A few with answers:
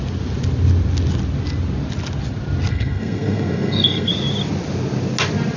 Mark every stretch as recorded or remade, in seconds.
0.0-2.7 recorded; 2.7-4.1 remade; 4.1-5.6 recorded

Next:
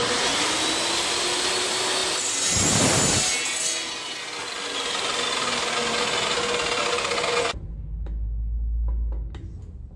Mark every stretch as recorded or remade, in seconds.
0.0-10.0 recorded

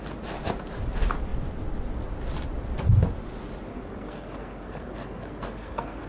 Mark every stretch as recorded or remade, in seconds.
0.0-3.7 recorded; 3.7-6.1 remade

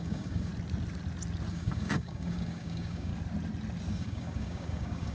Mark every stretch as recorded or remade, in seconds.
0.0-0.5 remade; 0.5-1.5 recorded; 1.5-3.1 remade; 3.1-3.9 recorded; 3.9-5.1 remade